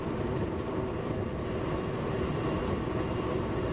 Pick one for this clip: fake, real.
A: real